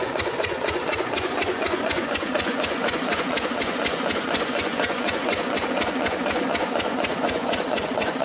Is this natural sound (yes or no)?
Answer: no